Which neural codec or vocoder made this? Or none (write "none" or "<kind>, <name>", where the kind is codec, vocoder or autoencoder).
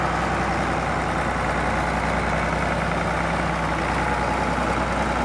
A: none